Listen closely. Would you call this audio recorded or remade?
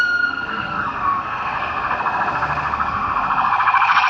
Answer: remade